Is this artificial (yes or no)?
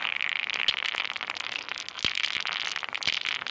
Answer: no